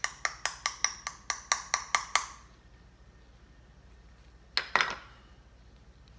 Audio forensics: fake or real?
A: real